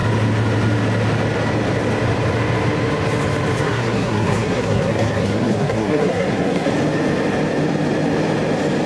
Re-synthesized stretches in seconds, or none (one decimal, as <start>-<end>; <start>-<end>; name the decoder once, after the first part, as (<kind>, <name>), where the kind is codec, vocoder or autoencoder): 3.6-6.7 (codec, SNAC)